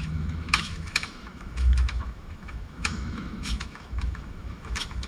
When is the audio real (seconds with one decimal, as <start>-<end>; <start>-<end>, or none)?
none